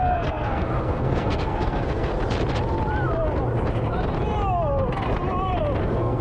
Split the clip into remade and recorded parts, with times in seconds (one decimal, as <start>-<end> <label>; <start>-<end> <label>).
0.0-2.1 remade; 2.1-5.8 recorded; 5.8-6.2 remade